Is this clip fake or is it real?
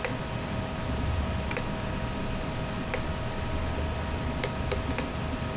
real